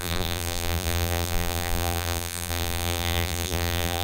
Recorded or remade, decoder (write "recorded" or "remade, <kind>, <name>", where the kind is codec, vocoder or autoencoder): remade, vocoder, BigVGAN v2